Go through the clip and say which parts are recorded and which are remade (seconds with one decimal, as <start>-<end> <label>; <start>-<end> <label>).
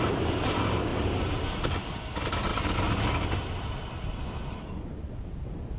0.0-5.8 recorded